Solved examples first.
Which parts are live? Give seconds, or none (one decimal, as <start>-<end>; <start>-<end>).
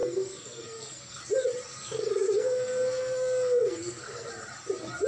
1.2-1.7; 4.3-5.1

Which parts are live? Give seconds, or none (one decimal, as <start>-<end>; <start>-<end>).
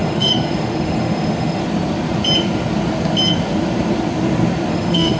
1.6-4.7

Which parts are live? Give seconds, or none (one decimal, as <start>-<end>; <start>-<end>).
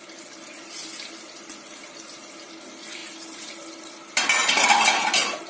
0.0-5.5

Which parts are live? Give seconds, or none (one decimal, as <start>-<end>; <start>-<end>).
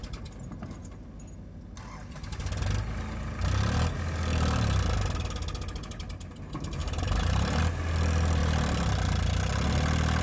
0.0-6.8; 7.6-10.2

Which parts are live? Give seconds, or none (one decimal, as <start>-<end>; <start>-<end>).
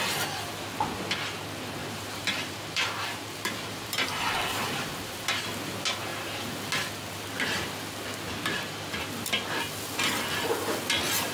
0.0-1.8; 5.4-11.3